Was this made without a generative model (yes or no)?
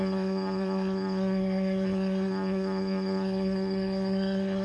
no